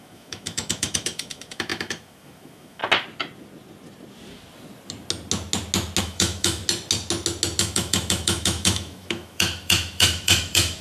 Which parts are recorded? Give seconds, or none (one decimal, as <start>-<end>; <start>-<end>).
2.8-6.0; 6.6-7.6